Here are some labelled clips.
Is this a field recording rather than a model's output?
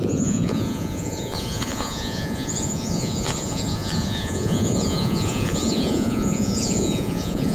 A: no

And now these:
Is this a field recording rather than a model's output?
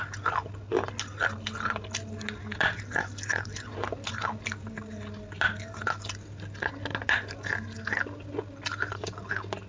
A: yes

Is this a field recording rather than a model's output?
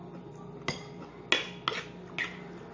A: yes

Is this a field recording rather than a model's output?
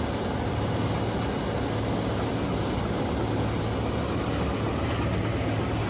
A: yes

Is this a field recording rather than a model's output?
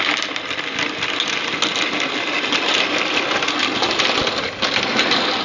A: yes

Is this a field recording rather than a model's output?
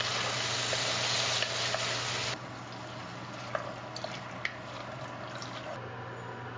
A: yes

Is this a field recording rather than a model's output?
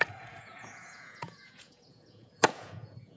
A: no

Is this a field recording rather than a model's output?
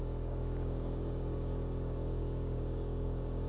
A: no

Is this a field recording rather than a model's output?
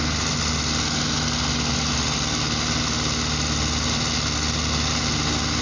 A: yes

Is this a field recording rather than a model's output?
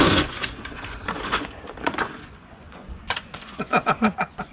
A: no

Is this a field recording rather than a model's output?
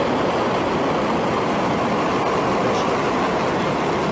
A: yes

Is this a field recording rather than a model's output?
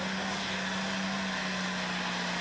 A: yes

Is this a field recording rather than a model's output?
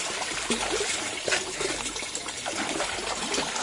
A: yes